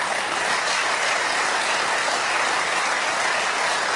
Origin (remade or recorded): recorded